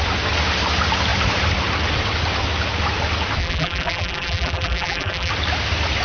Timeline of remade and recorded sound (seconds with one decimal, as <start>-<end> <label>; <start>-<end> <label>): 0.0-3.4 recorded; 3.4-5.3 remade; 5.3-6.0 recorded